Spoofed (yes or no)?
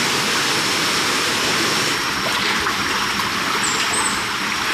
no